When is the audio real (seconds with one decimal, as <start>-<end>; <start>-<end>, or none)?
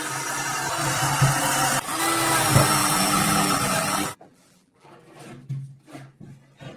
0.0-2.8; 4.9-6.8